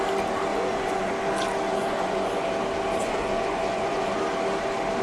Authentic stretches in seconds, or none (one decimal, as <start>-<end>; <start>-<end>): 0.0-0.5; 1.1-1.8; 2.5-3.0; 4.2-5.0